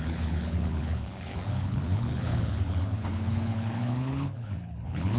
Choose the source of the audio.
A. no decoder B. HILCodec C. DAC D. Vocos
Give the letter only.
B